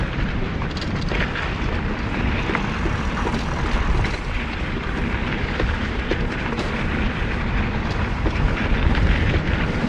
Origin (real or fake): fake